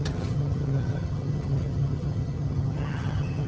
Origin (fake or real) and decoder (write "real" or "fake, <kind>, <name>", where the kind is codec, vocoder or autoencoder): fake, vocoder, HiFi-GAN